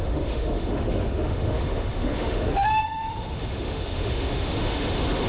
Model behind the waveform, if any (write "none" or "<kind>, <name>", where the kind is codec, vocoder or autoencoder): autoencoder, DAC-VAE